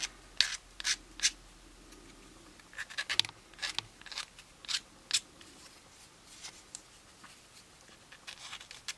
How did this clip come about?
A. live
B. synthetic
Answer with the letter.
A